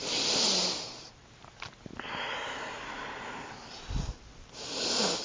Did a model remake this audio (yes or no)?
no